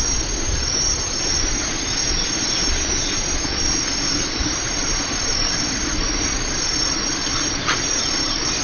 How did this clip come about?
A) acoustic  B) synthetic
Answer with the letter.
A